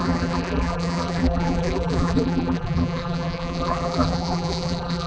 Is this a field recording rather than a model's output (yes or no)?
no